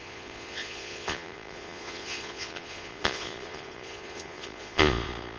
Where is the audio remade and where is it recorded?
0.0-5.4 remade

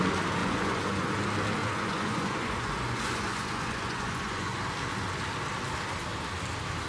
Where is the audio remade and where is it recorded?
0.0-0.4 recorded; 0.4-1.1 remade; 1.1-1.6 recorded; 1.6-4.6 remade; 4.6-6.9 recorded

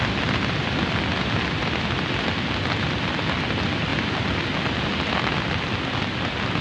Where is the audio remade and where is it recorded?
0.0-6.6 recorded

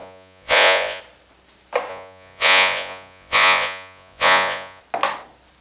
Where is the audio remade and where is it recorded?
0.0-1.0 remade; 1.0-1.9 recorded; 1.9-4.8 remade; 4.8-5.6 recorded

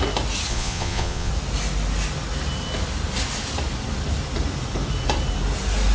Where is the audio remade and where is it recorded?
0.0-0.5 recorded; 0.5-1.3 remade; 1.3-5.9 recorded

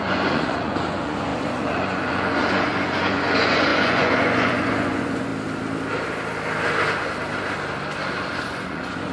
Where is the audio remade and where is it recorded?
0.0-5.3 remade; 5.3-8.4 recorded; 8.4-9.1 remade

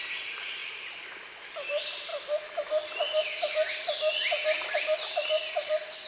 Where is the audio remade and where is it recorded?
0.0-6.1 recorded